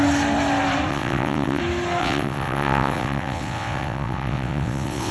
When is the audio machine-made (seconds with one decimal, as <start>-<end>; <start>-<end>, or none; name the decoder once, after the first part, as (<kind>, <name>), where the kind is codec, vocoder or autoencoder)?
0.9-1.6 (vocoder, WaveNeXt); 2.0-5.1

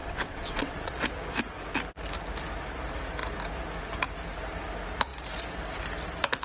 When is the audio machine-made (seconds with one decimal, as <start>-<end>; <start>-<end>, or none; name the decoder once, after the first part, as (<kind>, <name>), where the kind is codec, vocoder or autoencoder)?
0.0-1.1 (vocoder, WaveNeXt)